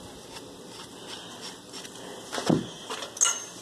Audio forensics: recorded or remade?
recorded